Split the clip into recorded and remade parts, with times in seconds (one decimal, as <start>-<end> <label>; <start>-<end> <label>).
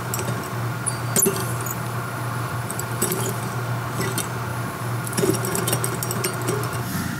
0.0-1.4 recorded; 1.4-3.4 remade; 3.4-4.5 recorded; 4.5-5.6 remade; 5.6-7.2 recorded